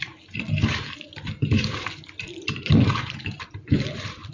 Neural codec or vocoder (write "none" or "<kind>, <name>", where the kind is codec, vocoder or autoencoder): vocoder, BigVGAN v2